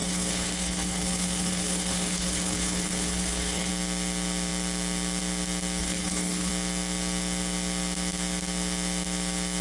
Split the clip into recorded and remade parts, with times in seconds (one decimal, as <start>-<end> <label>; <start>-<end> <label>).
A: 0.0-3.7 remade; 3.7-5.8 recorded; 5.8-6.5 remade; 6.5-9.6 recorded